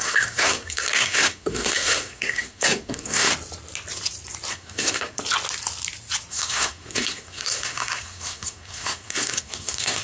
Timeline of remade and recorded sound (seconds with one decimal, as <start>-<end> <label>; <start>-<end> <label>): 0.0-3.3 remade; 3.3-4.5 recorded; 4.5-5.2 remade; 5.2-6.3 recorded; 6.3-10.0 remade